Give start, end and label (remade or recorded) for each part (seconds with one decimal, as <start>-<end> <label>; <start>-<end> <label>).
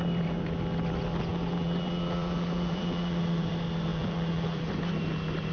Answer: 0.0-1.3 recorded; 1.3-3.5 remade; 3.5-3.9 recorded; 3.9-4.7 remade; 4.7-5.5 recorded